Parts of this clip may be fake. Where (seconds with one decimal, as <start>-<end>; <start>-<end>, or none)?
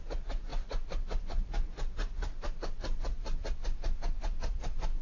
0.5-3.5; 4.2-5.0